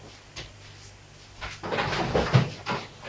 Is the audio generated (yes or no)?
no